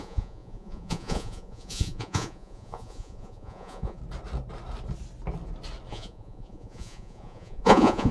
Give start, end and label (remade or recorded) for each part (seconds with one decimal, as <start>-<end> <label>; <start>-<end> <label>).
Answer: 0.0-4.0 remade; 4.0-5.9 recorded; 5.9-8.1 remade